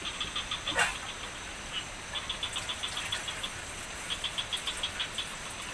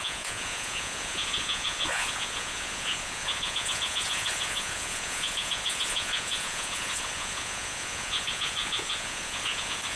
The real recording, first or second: first